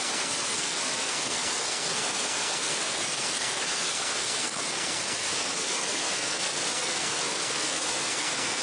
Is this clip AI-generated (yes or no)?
yes